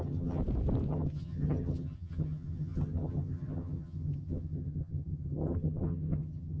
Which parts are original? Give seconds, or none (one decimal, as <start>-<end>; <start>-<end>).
0.4-0.9